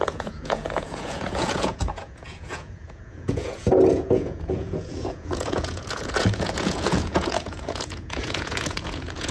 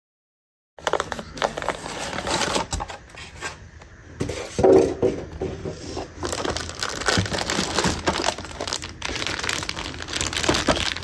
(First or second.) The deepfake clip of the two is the first